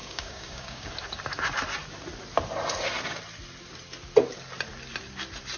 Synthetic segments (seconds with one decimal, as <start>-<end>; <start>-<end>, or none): 0.0-0.9